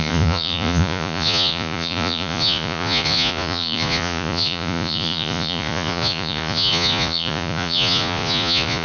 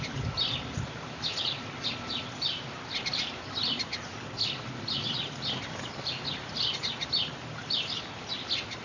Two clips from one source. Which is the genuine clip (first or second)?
second